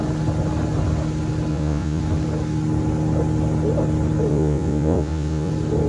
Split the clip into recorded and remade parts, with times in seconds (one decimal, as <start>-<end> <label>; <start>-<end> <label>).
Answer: 0.0-1.5 recorded; 1.5-2.0 remade; 2.0-4.3 recorded; 4.3-5.5 remade; 5.5-5.9 recorded